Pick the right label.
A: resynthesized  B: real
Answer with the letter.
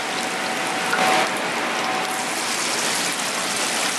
B